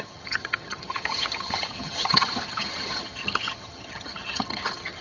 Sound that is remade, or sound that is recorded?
remade